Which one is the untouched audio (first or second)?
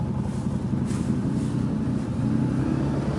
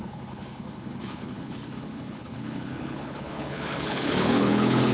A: first